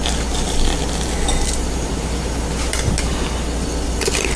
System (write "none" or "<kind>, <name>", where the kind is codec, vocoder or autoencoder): none